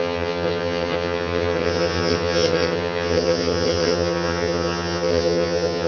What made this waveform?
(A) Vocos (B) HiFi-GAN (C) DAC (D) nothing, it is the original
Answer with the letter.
B